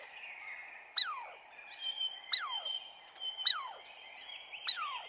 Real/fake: real